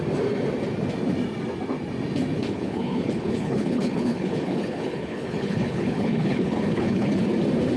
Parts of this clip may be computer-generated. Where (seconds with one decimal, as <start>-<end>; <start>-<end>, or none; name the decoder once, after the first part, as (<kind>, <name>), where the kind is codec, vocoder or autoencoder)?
2.4-7.1 (codec, HILCodec)